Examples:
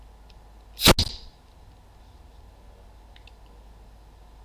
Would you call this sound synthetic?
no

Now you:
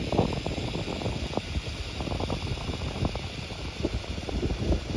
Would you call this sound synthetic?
no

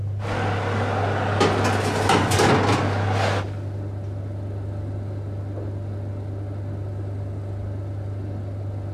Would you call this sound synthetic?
no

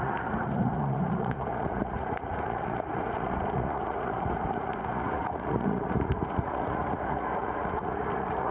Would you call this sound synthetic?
yes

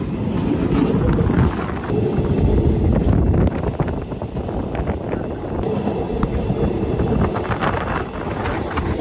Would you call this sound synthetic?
no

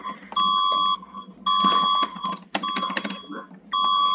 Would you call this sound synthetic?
no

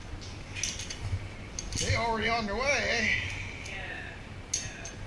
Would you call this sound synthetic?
no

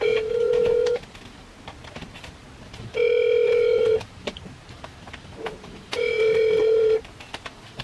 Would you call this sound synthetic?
yes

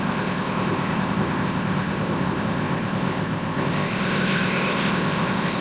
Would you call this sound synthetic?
yes